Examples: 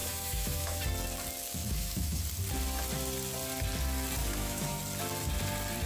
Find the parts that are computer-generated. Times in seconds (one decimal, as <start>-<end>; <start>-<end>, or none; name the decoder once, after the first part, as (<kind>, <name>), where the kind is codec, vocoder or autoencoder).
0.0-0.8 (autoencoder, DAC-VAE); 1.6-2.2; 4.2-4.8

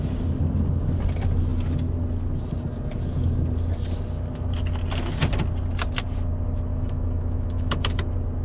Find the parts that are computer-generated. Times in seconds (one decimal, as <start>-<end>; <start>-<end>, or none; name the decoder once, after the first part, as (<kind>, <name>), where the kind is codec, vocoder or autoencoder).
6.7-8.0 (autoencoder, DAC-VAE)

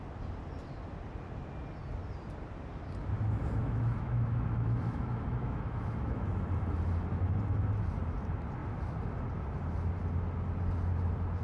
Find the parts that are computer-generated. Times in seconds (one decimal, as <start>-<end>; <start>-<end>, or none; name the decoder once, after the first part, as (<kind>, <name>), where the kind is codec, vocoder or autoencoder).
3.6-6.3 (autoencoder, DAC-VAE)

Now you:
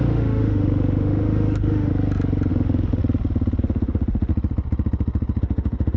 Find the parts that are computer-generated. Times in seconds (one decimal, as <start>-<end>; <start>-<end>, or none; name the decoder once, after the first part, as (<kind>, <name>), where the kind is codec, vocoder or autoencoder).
0.0-1.9 (autoencoder, DAC-VAE); 2.5-3.0; 3.6-4.3; 5.4-6.0

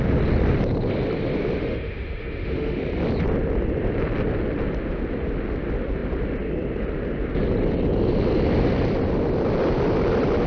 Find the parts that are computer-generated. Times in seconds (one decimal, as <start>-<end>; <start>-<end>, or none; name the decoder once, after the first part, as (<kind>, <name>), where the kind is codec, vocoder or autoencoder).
1.6-2.8 (autoencoder, DAC-VAE)